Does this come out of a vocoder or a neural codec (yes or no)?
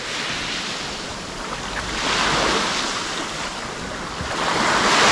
no